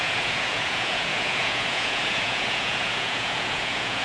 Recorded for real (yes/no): no